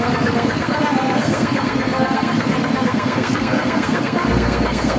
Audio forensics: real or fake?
fake